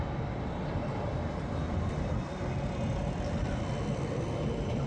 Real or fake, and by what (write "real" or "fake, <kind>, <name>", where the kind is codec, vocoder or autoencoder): real